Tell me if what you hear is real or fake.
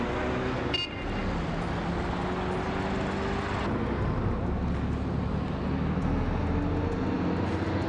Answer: real